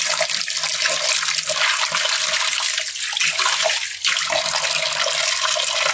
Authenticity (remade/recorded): recorded